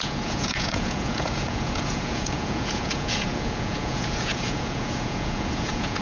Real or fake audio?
fake